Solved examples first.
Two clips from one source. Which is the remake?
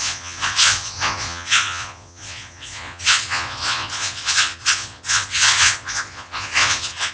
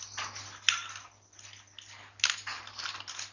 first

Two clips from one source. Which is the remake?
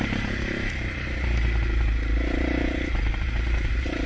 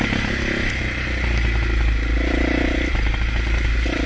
first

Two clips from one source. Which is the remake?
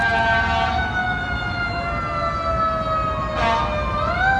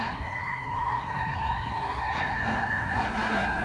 second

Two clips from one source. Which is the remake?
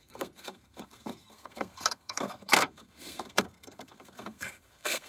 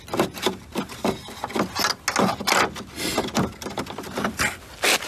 first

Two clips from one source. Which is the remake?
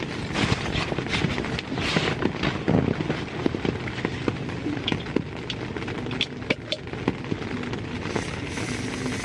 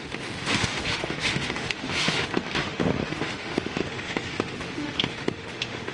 second